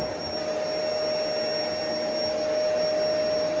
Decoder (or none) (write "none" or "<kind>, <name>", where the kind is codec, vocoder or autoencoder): none